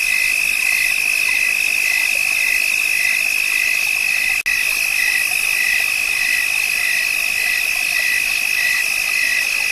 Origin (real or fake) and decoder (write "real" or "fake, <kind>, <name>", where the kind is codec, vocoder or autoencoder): real